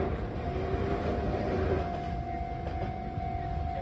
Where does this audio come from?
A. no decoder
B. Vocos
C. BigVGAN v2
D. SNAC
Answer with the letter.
A